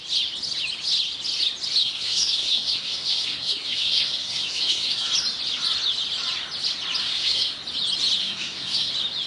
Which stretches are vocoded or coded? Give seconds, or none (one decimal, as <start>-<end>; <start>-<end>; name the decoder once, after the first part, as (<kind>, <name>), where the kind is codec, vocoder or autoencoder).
1.8-5.1 (codec, SNAC); 7.0-7.6; 8.2-8.9